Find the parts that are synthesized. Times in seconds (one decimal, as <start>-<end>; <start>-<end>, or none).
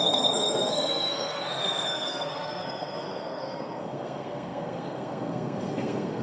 0.0-6.2